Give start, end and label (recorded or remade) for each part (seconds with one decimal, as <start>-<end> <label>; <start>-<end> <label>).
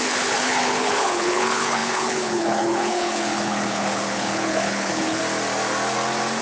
0.0-5.2 remade; 5.2-6.4 recorded